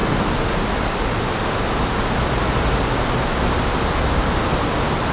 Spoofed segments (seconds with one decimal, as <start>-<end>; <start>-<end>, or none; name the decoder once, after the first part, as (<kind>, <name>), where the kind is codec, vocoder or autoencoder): none